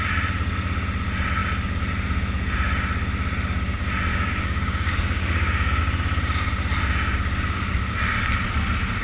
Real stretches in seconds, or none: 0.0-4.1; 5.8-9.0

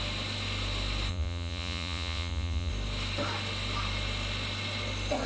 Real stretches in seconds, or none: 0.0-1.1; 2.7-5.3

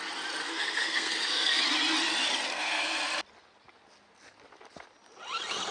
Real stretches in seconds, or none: 0.0-0.4; 1.6-2.5; 3.0-5.7

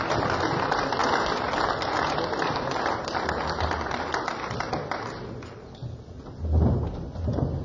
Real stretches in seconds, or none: 0.0-7.6

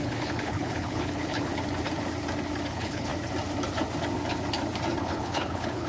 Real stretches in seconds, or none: 1.5-2.7; 3.1-5.0